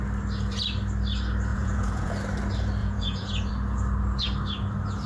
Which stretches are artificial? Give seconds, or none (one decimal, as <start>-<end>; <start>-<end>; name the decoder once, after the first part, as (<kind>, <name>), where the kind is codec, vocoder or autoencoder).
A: 1.5-2.1 (vocoder, Vocos); 2.8-3.5